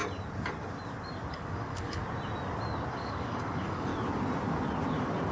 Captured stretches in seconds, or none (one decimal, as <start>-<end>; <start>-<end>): 0.0-1.3; 2.0-2.9; 3.9-5.3